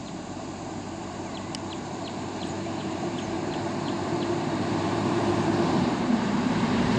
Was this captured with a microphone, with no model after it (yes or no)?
no